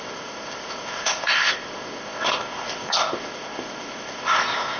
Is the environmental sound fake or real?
fake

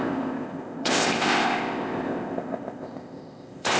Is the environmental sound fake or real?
fake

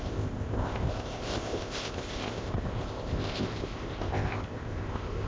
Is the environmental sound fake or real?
fake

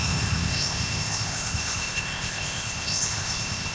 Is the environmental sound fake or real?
fake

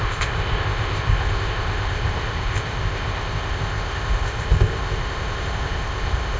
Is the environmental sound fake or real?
fake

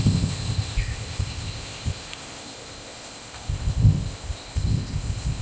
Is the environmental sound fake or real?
fake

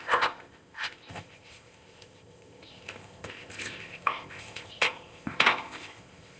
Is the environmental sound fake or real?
fake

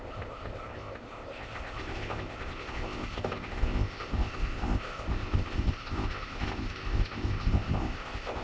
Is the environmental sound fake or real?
fake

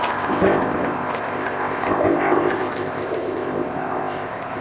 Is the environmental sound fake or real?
fake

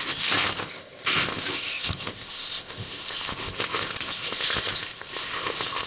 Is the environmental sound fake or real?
fake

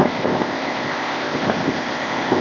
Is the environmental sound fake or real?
fake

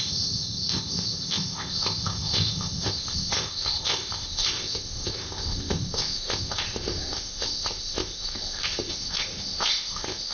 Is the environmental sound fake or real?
fake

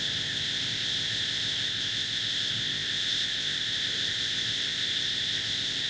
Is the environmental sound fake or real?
fake